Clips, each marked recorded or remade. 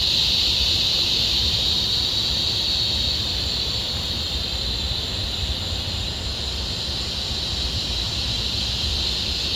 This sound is recorded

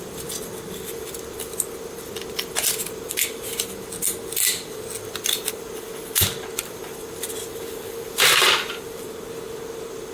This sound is recorded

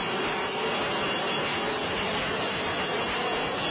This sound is recorded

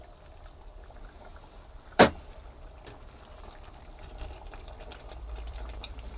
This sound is remade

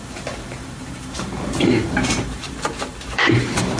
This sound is remade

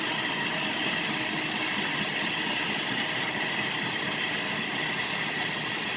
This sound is recorded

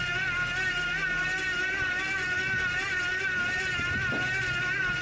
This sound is recorded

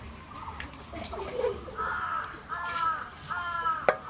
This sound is remade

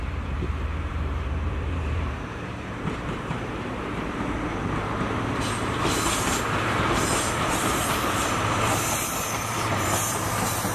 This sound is remade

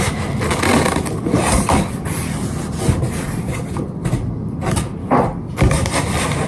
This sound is recorded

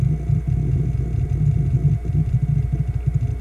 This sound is recorded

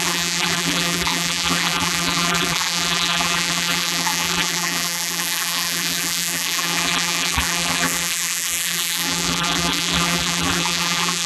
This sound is remade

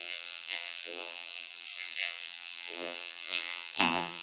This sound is remade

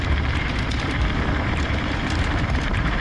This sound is remade